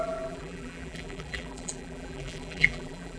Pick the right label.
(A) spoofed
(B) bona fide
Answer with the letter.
A